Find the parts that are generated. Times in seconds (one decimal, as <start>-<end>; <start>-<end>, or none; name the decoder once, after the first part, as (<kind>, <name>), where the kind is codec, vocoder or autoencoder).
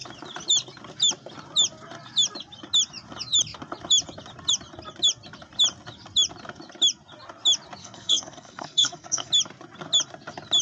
7.8-9.3 (codec, SNAC)